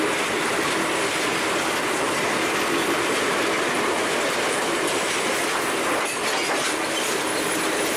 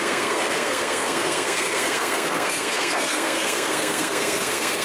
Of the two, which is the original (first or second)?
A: first